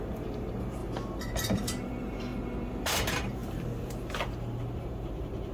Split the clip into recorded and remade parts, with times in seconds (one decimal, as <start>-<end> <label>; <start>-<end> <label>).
0.0-0.8 remade; 0.8-1.4 recorded; 1.4-2.3 remade; 2.3-3.0 recorded; 3.0-5.5 remade